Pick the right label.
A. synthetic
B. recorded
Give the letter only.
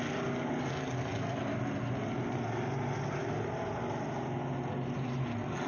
B